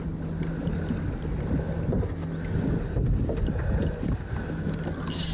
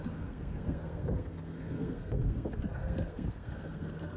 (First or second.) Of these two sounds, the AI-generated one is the second